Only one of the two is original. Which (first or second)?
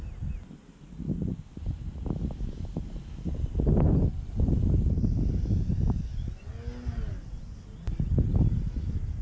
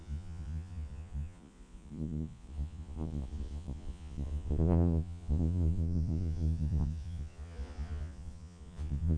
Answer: first